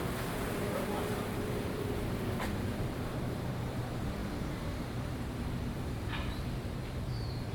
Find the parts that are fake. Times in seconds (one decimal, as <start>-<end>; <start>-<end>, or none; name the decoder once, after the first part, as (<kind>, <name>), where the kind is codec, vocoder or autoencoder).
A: 0.0-7.5 (vocoder, BigVGAN v2)